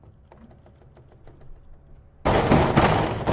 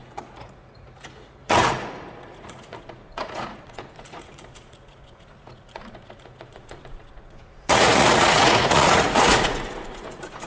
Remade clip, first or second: second